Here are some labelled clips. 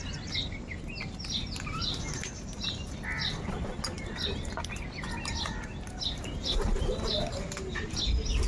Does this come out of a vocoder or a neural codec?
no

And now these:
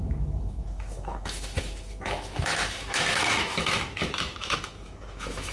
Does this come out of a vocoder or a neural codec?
yes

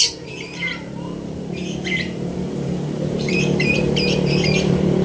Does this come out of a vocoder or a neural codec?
yes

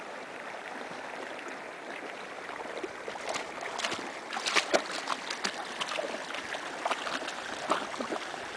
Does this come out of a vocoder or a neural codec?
no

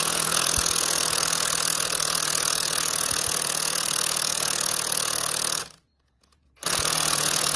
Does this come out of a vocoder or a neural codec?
yes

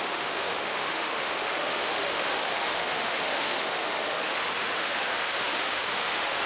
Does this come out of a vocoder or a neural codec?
yes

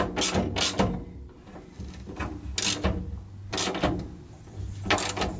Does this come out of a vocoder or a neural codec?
no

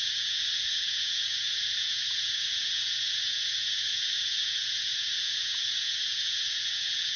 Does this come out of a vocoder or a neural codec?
yes